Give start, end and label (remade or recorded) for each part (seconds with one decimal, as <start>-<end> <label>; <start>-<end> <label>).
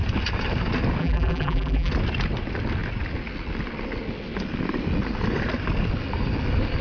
0.0-1.0 recorded; 1.0-1.9 remade; 1.9-6.8 recorded